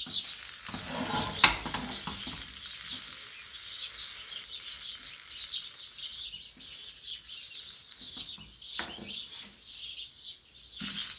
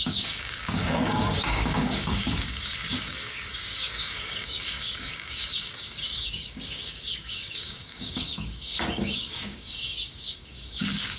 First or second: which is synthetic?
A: second